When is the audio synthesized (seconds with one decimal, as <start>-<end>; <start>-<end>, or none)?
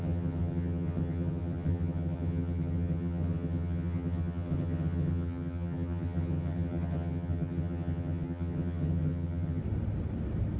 0.0-9.6